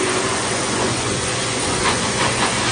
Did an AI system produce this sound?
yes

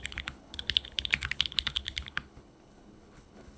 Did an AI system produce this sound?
yes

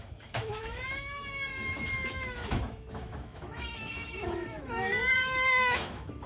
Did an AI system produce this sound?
yes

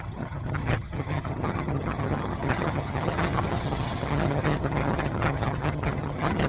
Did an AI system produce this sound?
yes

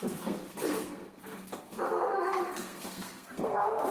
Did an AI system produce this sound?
yes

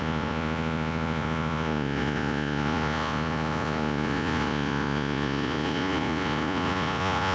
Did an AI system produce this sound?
yes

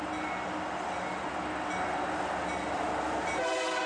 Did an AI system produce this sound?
no